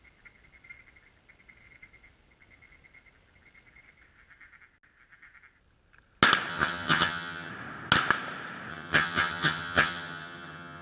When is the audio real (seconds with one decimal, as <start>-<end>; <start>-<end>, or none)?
0.0-6.5; 7.5-8.7